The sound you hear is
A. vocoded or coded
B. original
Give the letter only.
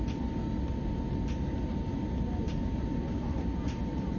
B